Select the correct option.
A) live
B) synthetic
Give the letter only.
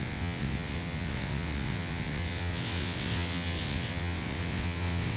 B